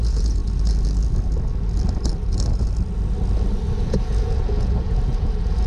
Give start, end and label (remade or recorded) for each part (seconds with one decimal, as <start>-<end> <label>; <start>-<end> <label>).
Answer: 0.0-0.4 remade; 0.4-3.8 recorded; 3.8-5.7 remade